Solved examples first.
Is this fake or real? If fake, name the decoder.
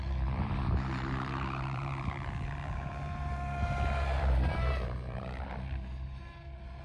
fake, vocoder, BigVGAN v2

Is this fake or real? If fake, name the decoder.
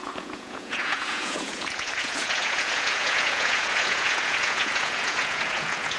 fake, vocoder, Vocos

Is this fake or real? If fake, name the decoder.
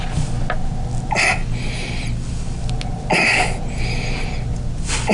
real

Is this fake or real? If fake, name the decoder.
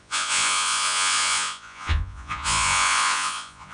fake, vocoder, Vocos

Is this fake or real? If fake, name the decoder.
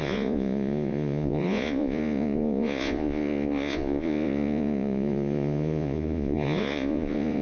fake, vocoder, Vocos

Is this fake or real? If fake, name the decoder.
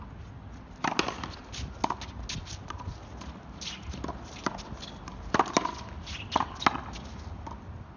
real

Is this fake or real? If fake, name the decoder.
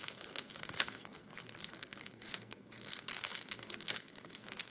fake, codec, SNAC